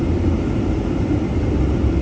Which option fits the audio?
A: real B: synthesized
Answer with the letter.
A